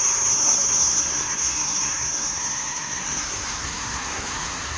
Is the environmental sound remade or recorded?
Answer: remade